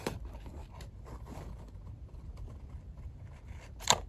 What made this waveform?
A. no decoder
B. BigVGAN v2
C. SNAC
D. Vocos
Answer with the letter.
B